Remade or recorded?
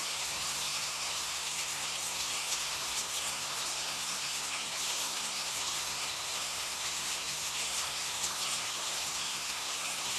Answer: remade